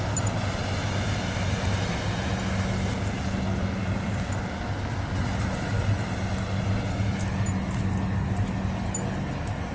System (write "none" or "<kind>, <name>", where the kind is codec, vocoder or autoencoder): none